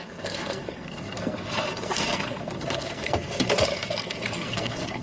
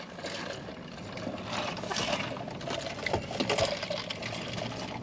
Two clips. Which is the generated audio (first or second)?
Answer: first